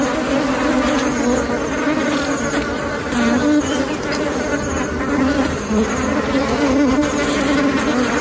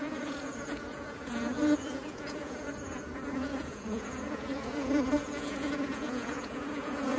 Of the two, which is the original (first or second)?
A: first